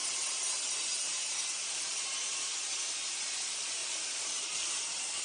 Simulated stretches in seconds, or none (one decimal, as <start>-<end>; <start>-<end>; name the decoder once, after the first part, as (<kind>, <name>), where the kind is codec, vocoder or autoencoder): 3.8-5.2 (vocoder, BigVGAN v2)